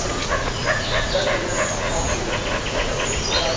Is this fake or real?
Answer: fake